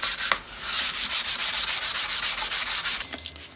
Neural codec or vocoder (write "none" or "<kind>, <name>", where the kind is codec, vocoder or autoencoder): none